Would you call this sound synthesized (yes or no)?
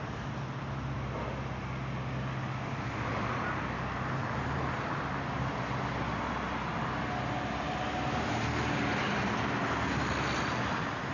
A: no